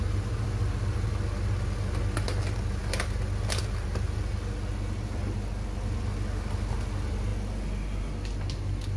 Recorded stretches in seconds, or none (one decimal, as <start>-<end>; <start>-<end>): 0.0-9.0